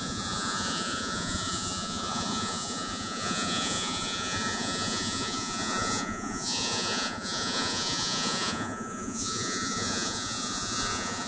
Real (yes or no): no